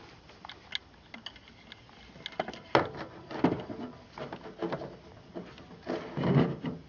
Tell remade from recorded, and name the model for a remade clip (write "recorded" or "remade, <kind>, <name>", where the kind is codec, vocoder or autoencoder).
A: recorded